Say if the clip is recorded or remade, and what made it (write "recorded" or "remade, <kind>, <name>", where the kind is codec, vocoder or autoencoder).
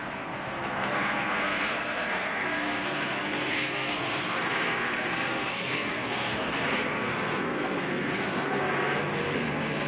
remade, codec, SNAC